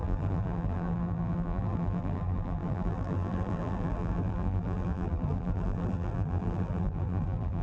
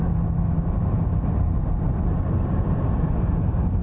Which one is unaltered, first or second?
second